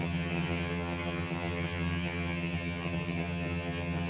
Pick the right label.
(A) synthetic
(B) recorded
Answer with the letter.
A